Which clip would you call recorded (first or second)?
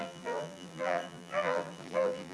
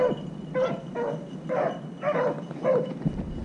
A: second